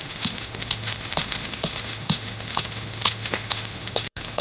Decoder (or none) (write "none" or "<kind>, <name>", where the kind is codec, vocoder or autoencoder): autoencoder, DAC-VAE